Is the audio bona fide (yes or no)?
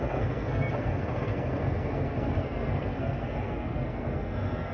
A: no